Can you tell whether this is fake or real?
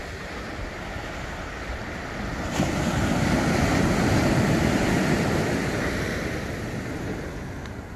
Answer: real